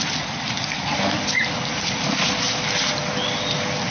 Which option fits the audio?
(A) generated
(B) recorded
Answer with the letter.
B